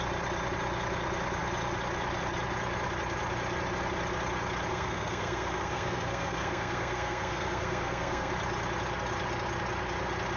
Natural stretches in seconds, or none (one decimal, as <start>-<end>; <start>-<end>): 0.0-4.7; 8.3-10.4

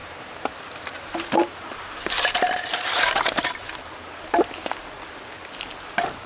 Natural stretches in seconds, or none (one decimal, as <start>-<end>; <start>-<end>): 3.8-6.3

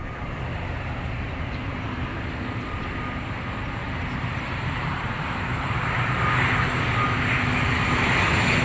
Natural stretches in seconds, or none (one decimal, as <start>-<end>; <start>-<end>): 0.0-0.5; 2.1-3.8; 6.5-8.6